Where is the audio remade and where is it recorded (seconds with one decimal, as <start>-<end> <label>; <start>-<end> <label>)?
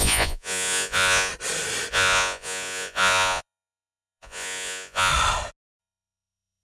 0.0-1.3 remade; 1.3-1.9 recorded; 1.9-5.1 remade; 5.1-5.8 recorded; 5.8-6.6 remade